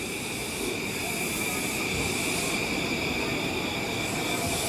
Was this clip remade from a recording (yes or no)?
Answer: no